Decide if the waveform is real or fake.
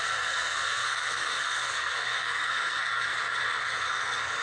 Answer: fake